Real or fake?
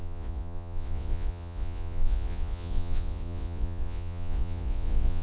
fake